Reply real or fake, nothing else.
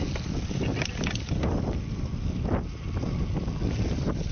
real